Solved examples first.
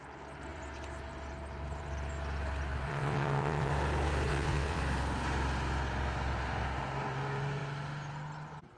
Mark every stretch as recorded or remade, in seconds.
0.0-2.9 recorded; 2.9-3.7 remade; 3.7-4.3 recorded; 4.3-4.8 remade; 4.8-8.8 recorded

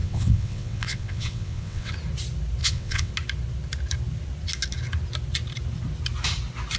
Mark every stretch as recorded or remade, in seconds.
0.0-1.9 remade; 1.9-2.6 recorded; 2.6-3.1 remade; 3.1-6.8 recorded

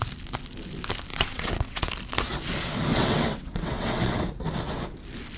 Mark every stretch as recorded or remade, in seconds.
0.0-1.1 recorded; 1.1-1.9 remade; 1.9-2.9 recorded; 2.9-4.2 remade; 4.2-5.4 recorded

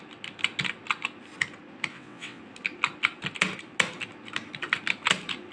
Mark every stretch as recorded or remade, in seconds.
0.0-1.9 recorded; 1.9-2.4 remade; 2.4-5.5 recorded

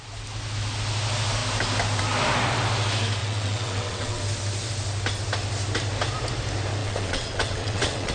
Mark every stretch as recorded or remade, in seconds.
0.0-3.2 recorded; 3.2-4.2 remade; 4.2-6.8 recorded; 6.8-8.1 remade